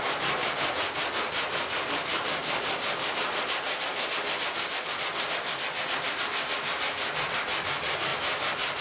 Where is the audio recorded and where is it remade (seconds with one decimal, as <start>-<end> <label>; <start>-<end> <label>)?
0.0-0.4 recorded; 0.4-4.1 remade; 4.1-8.8 recorded

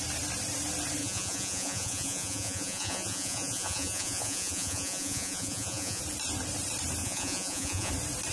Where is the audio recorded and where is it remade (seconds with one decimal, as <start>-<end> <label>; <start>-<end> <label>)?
0.0-1.0 recorded; 1.0-6.0 remade; 6.0-7.0 recorded; 7.0-7.9 remade; 7.9-8.3 recorded

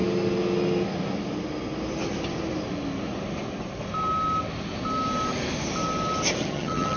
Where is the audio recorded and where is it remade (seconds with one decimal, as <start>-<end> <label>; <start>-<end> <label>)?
0.0-6.4 recorded; 6.4-7.0 remade